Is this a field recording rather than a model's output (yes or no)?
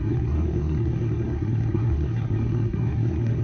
no